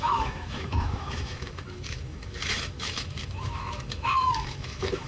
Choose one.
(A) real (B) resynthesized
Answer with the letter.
B